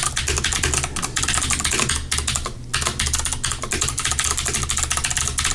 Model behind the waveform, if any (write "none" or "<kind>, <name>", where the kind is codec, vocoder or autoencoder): none